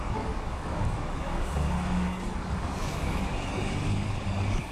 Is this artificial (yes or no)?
yes